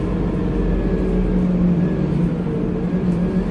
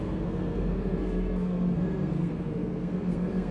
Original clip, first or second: first